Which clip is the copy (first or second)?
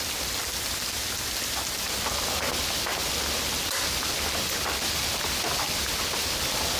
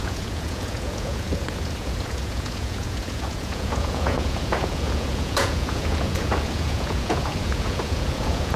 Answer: second